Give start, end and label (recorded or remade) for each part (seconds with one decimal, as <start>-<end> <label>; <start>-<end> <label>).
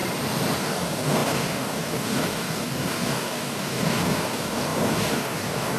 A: 0.0-0.6 recorded; 0.6-5.8 remade